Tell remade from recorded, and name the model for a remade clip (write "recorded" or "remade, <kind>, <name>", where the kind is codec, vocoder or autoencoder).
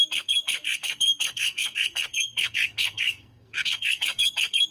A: remade, codec, SNAC